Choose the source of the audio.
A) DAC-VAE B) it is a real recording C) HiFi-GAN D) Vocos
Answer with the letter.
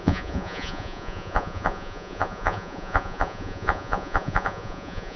D